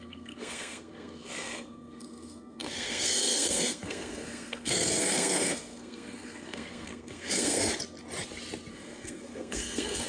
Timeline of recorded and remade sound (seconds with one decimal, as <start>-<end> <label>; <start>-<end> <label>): 0.0-7.7 remade; 7.7-8.7 recorded; 8.7-10.1 remade

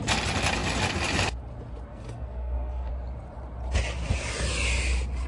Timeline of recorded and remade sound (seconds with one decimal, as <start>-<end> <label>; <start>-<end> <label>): 0.0-1.9 recorded; 1.9-2.9 remade; 2.9-5.3 recorded

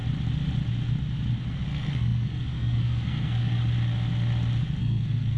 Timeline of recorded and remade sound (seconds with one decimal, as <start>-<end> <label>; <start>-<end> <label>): 0.0-1.5 recorded; 1.5-3.6 remade; 3.6-4.8 recorded; 4.8-5.4 remade

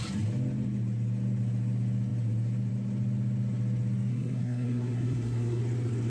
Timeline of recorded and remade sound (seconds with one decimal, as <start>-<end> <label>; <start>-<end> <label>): 0.0-4.1 recorded; 4.1-5.6 remade; 5.6-6.1 recorded

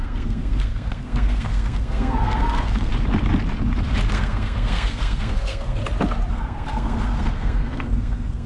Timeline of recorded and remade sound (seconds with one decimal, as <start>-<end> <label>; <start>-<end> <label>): 0.0-2.9 remade; 2.9-4.1 recorded; 4.1-5.8 remade; 5.8-6.3 recorded; 6.3-8.5 remade

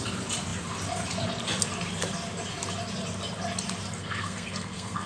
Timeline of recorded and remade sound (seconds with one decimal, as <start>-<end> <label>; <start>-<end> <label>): 0.0-4.0 recorded; 4.0-5.1 remade

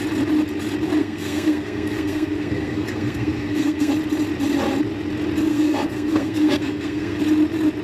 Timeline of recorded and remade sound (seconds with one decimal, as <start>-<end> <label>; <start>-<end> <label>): 0.0-1.0 recorded; 1.0-3.9 remade; 3.9-5.5 recorded; 5.5-7.2 remade; 7.2-7.8 recorded